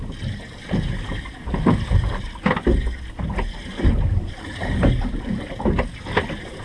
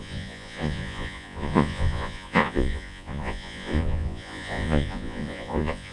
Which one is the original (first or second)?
first